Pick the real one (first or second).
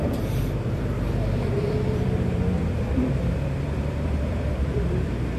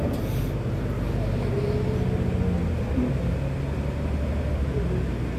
second